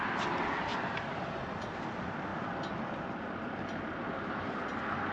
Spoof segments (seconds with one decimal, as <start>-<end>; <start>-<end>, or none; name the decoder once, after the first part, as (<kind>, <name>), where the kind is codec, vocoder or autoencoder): none